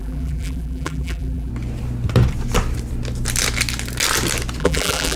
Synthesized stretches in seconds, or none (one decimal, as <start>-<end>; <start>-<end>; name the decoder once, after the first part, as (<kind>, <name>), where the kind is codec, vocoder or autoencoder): 0.0-1.5 (vocoder, BigVGAN v2); 4.6-5.2